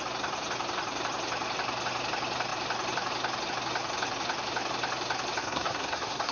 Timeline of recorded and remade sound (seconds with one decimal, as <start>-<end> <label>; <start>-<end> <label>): 0.0-5.4 recorded; 5.4-6.3 remade

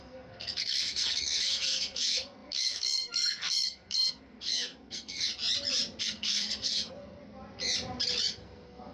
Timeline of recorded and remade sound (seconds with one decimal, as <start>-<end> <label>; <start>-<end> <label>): 0.0-5.3 remade; 5.3-6.0 recorded; 6.0-7.2 remade; 7.2-8.3 recorded; 8.3-8.9 remade

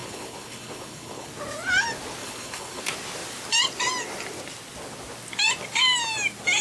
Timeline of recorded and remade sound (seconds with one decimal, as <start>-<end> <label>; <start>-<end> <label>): 0.0-1.3 remade; 1.3-2.2 recorded; 2.2-2.8 remade; 2.8-6.6 recorded

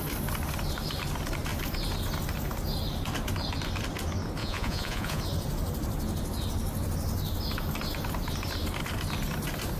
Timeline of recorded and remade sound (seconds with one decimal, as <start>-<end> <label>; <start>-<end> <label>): 0.0-4.4 recorded; 4.4-5.2 remade; 5.2-9.8 recorded

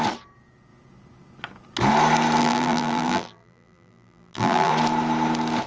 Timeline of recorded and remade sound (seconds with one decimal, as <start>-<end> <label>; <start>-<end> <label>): 0.0-2.4 recorded; 2.4-4.7 remade; 4.7-5.7 recorded

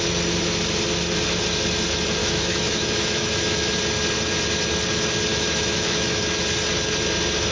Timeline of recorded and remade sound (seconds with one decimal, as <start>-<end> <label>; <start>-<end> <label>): 0.0-2.2 recorded; 2.2-3.7 remade; 3.7-5.3 recorded; 5.3-6.2 remade; 6.2-7.5 recorded

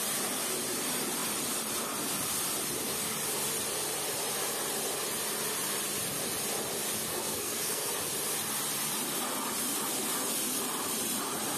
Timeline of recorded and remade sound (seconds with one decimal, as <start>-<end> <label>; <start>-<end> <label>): 0.0-7.1 recorded; 7.1-7.9 remade; 7.9-11.6 recorded

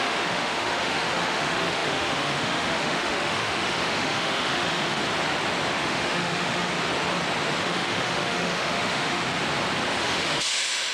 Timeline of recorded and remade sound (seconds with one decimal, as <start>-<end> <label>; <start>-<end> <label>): 0.0-5.0 remade; 5.0-5.8 recorded; 5.8-6.7 remade; 6.7-7.6 recorded; 7.6-9.3 remade; 9.3-10.0 recorded; 10.0-10.9 remade